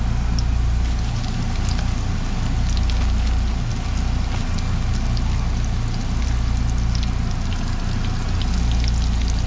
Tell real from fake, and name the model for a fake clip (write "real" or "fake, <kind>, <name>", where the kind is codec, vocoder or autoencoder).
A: real